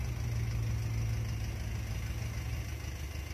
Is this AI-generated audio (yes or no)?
no